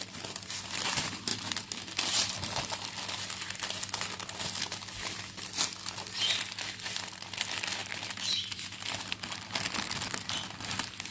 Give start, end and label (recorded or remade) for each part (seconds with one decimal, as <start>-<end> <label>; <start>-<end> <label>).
0.0-11.1 recorded